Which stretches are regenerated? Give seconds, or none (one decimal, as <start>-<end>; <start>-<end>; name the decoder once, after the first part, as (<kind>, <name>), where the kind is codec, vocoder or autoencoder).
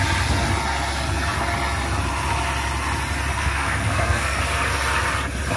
3.3-4.4 (codec, SNAC)